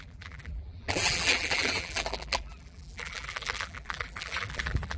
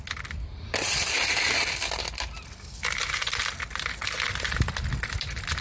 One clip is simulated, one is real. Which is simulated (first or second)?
first